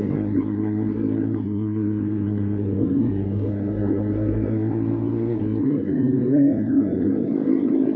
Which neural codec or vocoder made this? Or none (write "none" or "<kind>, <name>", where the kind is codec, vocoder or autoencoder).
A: codec, SNAC